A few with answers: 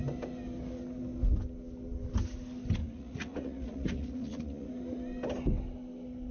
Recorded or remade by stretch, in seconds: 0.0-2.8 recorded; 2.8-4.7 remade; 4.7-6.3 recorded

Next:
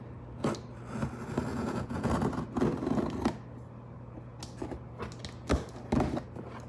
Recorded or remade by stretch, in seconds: 0.0-1.5 recorded; 1.5-2.1 remade; 2.1-6.7 recorded

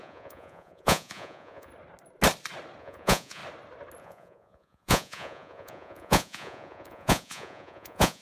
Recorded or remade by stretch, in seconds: 0.0-1.7 remade; 1.7-2.8 recorded; 2.8-3.4 remade; 3.4-4.0 recorded; 4.0-8.2 remade

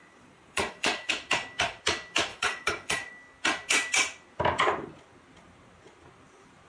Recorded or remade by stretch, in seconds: 0.0-1.1 remade; 1.1-2.3 recorded; 2.3-3.1 remade; 3.1-6.7 recorded

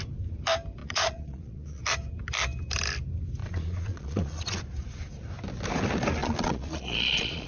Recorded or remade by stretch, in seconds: 0.0-0.8 recorded; 0.8-1.8 remade; 1.8-3.4 recorded; 3.4-4.6 remade; 4.6-6.2 recorded; 6.2-7.5 remade

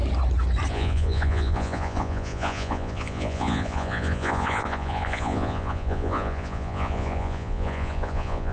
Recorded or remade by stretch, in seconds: 0.0-0.7 recorded; 0.7-8.5 remade

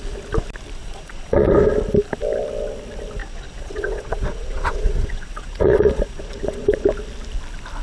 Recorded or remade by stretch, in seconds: 0.0-0.8 recorded; 0.8-1.5 remade; 1.5-3.2 recorded; 3.2-6.8 remade; 6.8-7.8 recorded